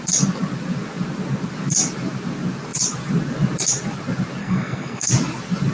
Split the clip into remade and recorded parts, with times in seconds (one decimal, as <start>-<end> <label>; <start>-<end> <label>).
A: 0.0-4.4 recorded; 4.4-5.1 remade; 5.1-5.7 recorded

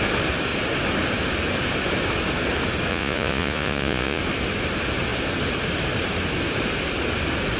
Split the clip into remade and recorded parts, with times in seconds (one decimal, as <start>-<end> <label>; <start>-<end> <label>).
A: 0.0-2.9 recorded; 2.9-4.2 remade; 4.2-7.6 recorded

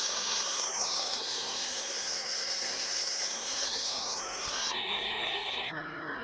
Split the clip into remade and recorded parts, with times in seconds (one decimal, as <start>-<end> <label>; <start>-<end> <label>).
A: 0.0-6.2 remade

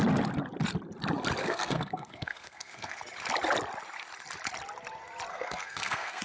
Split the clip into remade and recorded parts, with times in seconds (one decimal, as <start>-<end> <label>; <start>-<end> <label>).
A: 0.0-1.4 recorded; 1.4-3.0 remade; 3.0-5.3 recorded; 5.3-6.2 remade

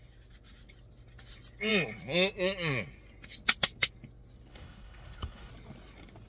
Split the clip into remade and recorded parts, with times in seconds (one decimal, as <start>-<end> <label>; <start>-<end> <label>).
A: 0.0-4.5 recorded; 4.5-5.5 remade; 5.5-6.3 recorded

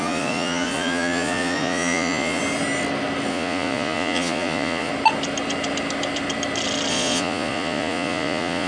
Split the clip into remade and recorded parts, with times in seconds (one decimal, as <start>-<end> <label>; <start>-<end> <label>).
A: 0.0-2.4 remade; 2.4-3.3 recorded; 3.3-4.9 remade; 4.9-6.9 recorded; 6.9-8.7 remade

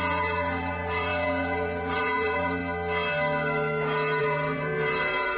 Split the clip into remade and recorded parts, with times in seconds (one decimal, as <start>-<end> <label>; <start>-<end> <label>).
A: 0.0-2.6 remade; 2.6-4.2 recorded; 4.2-5.4 remade

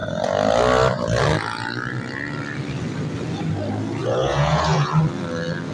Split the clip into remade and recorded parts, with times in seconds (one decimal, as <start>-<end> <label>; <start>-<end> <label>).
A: 0.0-4.0 recorded; 4.0-4.9 remade; 4.9-5.7 recorded